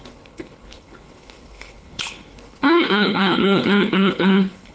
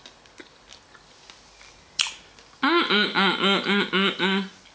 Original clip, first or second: second